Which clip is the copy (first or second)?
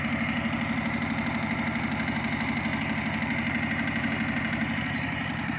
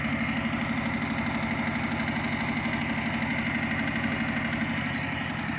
first